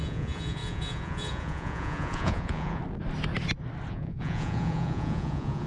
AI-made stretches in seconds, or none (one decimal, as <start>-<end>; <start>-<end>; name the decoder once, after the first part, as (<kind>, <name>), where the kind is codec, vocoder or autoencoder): 0.0-2.8 (vocoder, Vocos); 3.9-5.7